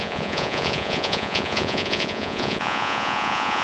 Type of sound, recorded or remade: remade